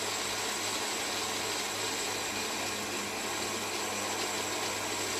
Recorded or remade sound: recorded